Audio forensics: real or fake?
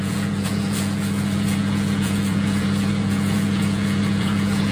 fake